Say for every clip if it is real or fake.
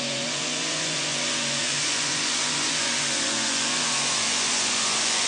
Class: fake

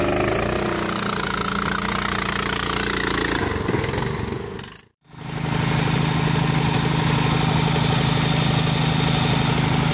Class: real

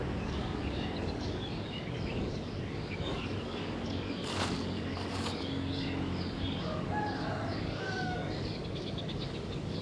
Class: fake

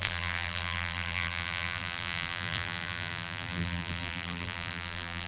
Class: fake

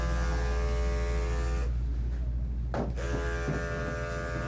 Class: real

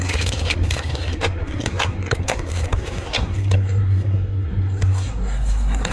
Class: fake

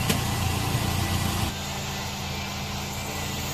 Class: real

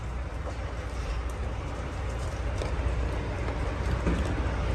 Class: real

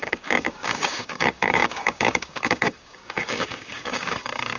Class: fake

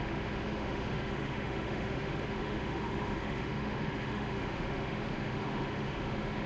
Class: fake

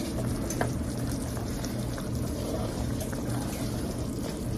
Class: fake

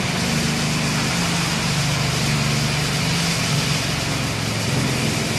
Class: real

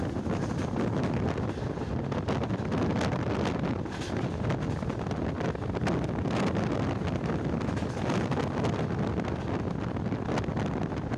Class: real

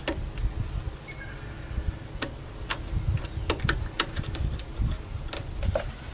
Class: real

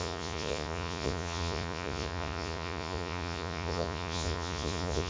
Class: fake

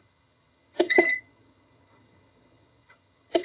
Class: fake